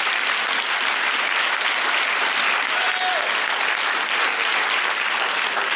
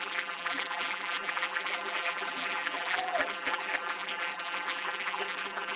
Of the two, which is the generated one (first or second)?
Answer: second